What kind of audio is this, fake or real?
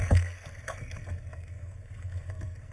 fake